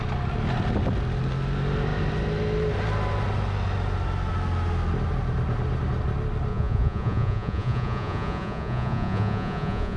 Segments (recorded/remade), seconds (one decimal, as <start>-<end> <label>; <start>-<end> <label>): 0.0-6.5 recorded; 6.5-10.0 remade